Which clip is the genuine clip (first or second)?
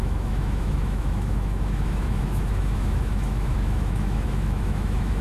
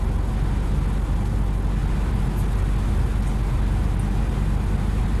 second